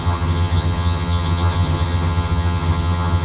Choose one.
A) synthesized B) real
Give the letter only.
A